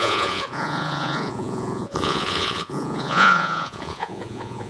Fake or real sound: fake